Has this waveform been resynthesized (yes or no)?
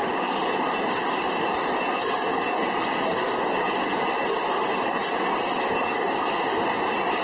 no